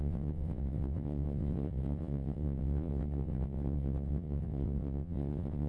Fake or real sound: fake